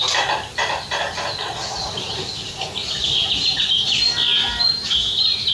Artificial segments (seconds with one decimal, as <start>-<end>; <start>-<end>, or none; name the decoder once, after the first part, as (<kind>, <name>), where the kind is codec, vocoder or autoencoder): none